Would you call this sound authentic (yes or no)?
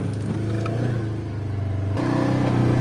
yes